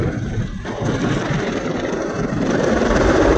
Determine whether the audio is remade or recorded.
remade